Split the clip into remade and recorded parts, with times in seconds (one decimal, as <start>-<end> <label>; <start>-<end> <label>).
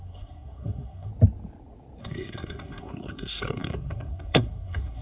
0.0-1.1 remade; 1.1-2.0 recorded; 2.0-5.0 remade